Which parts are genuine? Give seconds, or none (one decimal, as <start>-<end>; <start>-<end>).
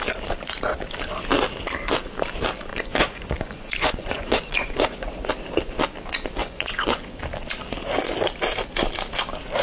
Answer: 0.0-2.7; 5.3-6.4; 7.2-9.6